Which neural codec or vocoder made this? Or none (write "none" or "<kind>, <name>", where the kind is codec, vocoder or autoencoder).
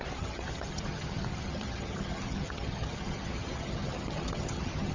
vocoder, HiFi-GAN